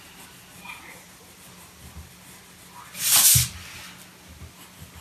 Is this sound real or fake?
real